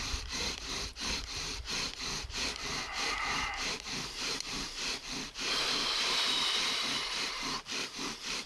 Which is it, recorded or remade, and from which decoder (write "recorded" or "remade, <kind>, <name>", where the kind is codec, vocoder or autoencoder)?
remade, vocoder, BigVGAN v2